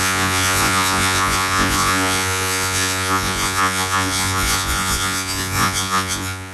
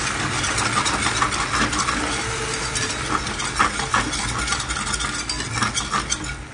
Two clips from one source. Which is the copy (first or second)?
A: first